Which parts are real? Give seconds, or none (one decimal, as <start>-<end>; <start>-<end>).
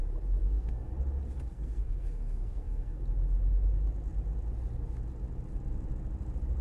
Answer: 0.0-0.4; 0.9-1.5; 3.0-6.6